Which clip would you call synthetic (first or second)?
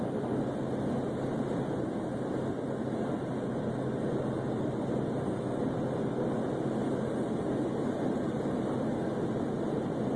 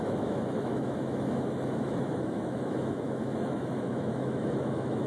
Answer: second